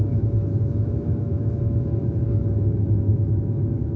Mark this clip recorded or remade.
remade